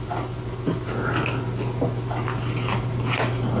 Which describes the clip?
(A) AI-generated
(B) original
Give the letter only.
B